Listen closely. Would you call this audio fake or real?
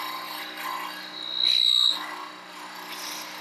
real